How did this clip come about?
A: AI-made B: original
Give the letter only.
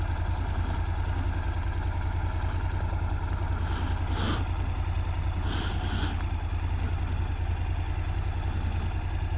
B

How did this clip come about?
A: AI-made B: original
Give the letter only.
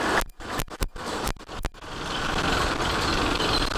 B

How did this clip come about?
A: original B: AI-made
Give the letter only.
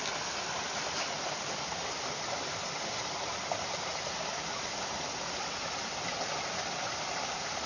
A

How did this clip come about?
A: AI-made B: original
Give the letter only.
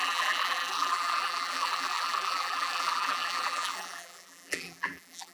A